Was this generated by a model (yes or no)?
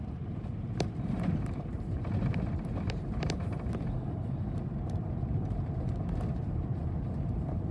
yes